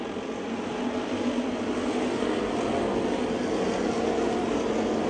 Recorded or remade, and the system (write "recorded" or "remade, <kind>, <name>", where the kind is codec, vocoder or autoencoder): recorded